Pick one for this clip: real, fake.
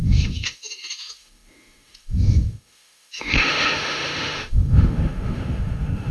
fake